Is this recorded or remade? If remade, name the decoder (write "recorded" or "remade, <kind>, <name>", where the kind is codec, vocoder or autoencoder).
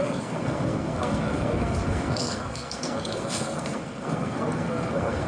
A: remade, codec, SNAC